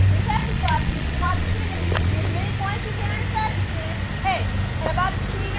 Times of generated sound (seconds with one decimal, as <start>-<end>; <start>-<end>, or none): 0.4-2.1